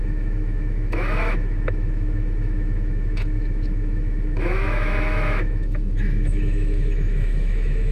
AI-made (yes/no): yes